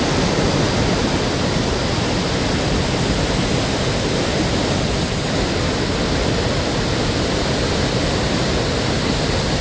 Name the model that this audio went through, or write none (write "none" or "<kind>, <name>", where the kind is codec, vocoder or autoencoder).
none